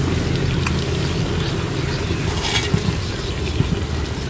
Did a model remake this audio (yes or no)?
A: no